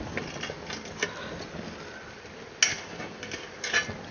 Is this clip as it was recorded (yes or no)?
yes